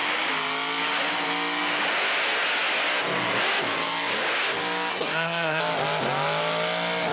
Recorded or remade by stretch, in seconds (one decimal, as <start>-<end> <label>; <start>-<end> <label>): 0.0-4.9 recorded; 4.9-5.6 remade; 5.6-7.1 recorded